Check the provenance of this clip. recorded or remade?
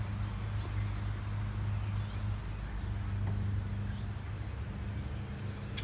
recorded